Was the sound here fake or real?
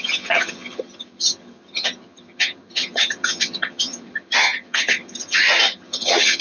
fake